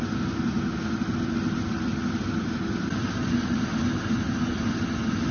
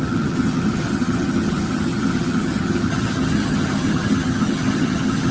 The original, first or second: first